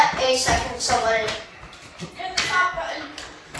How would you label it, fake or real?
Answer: real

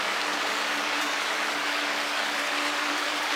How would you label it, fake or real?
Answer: fake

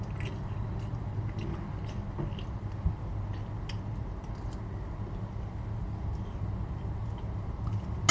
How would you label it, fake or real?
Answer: real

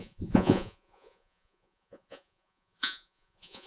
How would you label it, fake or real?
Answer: fake